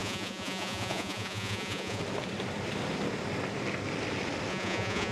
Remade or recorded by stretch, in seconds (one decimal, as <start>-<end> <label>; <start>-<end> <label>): 0.0-2.0 remade; 2.0-4.5 recorded; 4.5-5.1 remade